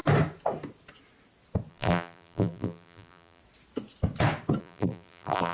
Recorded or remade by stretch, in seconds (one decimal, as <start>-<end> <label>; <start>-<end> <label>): 0.0-1.7 recorded; 1.7-3.4 remade; 3.4-4.6 recorded; 4.6-5.5 remade